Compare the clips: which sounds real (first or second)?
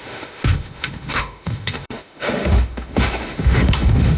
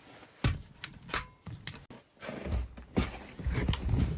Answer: second